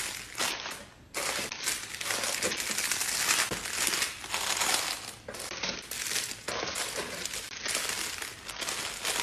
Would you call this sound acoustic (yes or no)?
yes